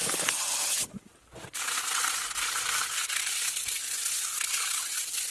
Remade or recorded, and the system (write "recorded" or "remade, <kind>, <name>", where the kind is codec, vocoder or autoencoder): recorded